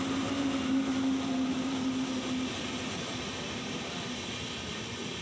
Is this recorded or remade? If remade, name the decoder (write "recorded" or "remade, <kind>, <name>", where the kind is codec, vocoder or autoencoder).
recorded